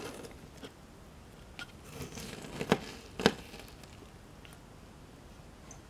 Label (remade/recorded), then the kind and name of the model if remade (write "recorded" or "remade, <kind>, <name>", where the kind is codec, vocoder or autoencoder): recorded